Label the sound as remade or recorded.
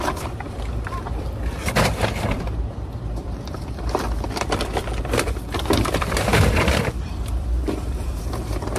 remade